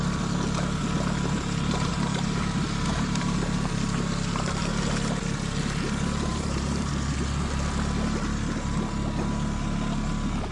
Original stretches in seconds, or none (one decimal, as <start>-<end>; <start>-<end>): 0.0-1.9; 4.6-6.3; 6.9-10.5